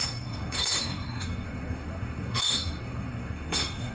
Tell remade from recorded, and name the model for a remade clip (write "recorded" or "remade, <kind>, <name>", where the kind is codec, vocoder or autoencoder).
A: remade, codec, SNAC